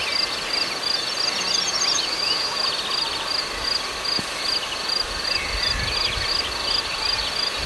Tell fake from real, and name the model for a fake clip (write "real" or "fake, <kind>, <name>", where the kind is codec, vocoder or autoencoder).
real